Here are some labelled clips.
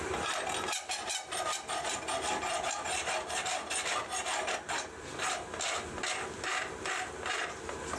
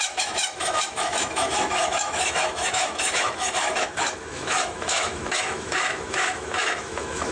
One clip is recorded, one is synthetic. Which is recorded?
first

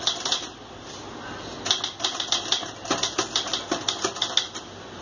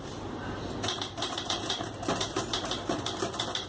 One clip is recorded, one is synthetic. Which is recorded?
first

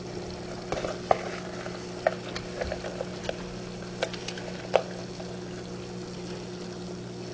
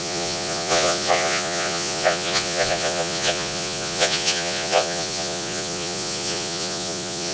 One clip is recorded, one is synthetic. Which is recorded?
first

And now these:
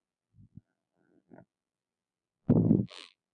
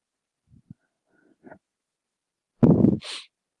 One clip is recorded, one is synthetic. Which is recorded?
second